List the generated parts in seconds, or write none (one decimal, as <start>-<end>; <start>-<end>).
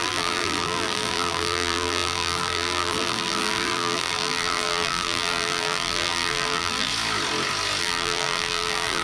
0.0-6.9; 7.8-9.0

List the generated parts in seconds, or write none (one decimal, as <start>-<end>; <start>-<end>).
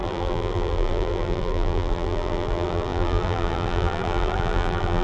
0.0-5.0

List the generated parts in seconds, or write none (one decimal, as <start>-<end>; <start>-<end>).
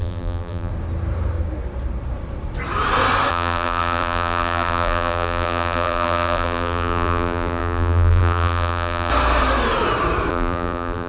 0.0-0.7; 3.3-9.1; 10.3-11.1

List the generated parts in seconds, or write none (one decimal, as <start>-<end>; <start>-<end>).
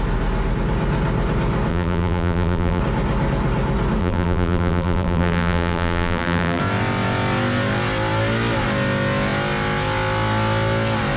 1.7-2.8; 4.0-6.6